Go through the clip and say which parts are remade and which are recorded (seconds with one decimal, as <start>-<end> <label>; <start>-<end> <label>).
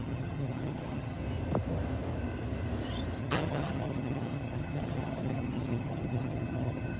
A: 0.0-1.2 remade; 1.2-3.2 recorded; 3.2-7.0 remade